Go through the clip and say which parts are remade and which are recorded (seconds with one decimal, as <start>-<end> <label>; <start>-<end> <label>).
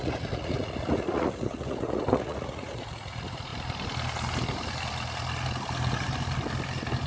0.0-3.5 remade; 3.5-7.1 recorded